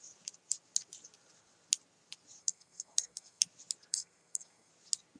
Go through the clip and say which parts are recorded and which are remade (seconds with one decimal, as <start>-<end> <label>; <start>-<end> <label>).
0.0-2.4 recorded; 2.4-3.4 remade; 3.4-3.9 recorded; 3.9-4.7 remade; 4.7-5.2 recorded